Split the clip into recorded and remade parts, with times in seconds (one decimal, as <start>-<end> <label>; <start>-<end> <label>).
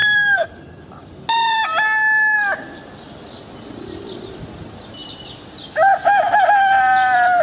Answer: 0.0-0.5 remade; 0.5-7.4 recorded